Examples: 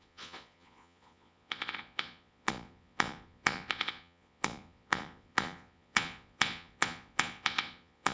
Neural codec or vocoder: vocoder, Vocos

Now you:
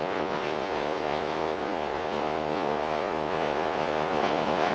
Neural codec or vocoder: vocoder, Vocos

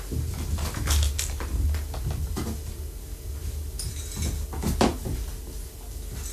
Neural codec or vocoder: none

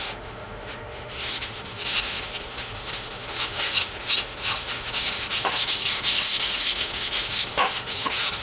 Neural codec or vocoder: autoencoder, DAC-VAE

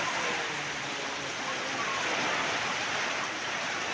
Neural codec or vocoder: none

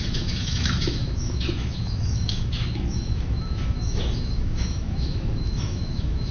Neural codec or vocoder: autoencoder, DAC-VAE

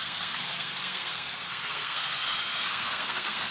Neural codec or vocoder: codec, SNAC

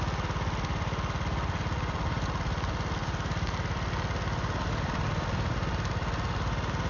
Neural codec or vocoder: none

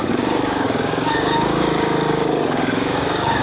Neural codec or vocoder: codec, DAC